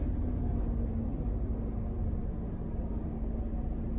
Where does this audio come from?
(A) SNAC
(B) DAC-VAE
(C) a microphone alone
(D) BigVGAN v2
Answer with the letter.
C